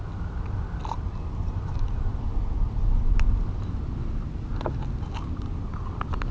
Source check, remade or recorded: recorded